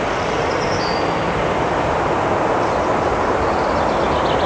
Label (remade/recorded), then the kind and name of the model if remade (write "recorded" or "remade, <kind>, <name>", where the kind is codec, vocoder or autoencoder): recorded